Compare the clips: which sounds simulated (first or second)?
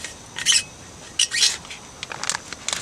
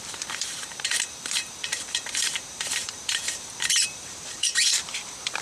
second